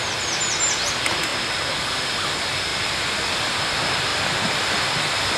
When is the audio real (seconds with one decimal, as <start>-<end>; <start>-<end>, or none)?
0.0-2.7; 3.5-4.1; 4.8-5.4